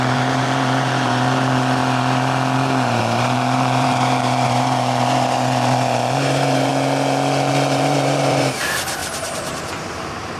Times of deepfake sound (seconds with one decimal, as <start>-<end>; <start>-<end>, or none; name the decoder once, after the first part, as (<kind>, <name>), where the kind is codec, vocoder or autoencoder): 0.0-1.8 (vocoder, BigVGAN v2); 3.0-6.7; 7.5-10.4